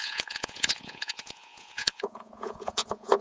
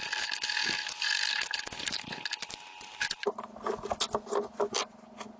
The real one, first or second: second